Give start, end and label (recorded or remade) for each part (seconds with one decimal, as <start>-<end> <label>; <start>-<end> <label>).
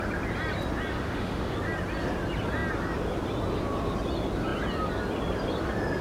0.0-1.0 recorded; 1.0-1.5 remade; 1.5-6.0 recorded